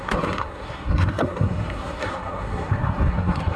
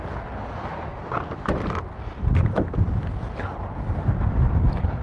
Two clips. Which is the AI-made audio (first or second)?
first